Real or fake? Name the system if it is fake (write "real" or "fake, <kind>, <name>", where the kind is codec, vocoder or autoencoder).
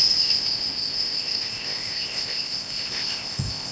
fake, codec, ZipCodec